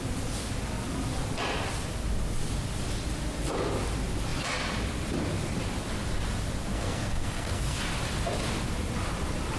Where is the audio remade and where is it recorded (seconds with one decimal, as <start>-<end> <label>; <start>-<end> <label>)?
0.0-6.6 recorded; 6.6-7.8 remade; 7.8-9.6 recorded